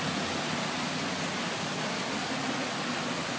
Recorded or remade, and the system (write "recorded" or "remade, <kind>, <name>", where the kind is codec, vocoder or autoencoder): recorded